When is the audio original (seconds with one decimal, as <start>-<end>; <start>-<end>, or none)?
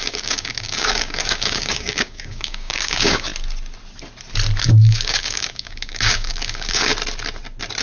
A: 3.3-4.6; 6.9-7.8